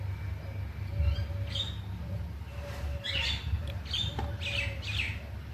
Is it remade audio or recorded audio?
recorded